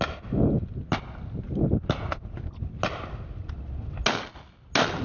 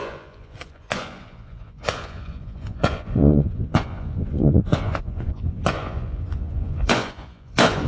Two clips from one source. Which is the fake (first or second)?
second